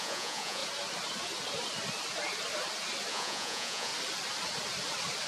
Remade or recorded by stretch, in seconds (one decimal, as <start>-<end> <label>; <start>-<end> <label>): 0.0-0.6 remade; 0.6-3.1 recorded; 3.1-3.9 remade; 3.9-5.3 recorded